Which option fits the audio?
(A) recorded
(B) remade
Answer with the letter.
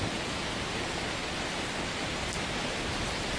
A